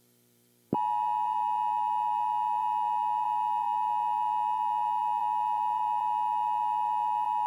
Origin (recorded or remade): remade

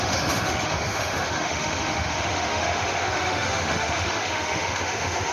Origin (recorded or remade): remade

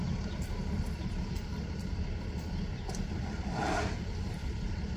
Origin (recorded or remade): recorded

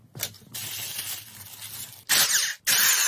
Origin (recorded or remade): recorded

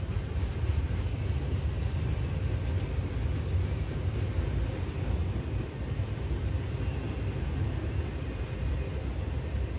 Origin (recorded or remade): recorded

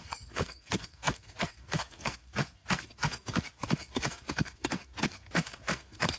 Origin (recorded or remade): remade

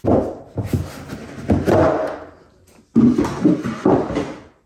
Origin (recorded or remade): recorded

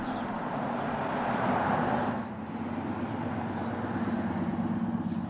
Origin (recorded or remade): recorded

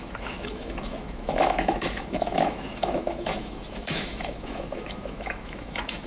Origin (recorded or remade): remade